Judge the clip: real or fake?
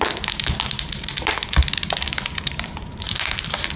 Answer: fake